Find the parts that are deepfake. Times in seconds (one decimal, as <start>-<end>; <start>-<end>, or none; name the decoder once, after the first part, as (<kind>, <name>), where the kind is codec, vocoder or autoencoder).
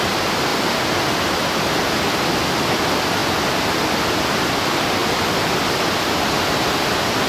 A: 0.5-2.0 (vocoder, BigVGAN v2)